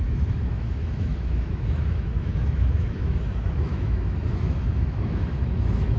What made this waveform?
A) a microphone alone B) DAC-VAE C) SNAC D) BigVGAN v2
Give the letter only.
B